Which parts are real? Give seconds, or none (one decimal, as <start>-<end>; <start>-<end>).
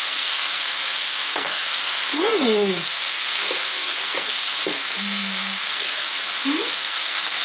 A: none